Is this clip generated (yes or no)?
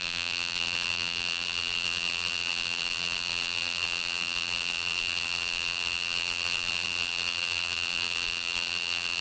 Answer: yes